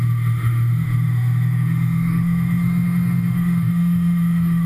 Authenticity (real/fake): fake